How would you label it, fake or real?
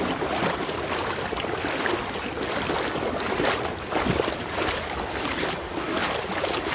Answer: real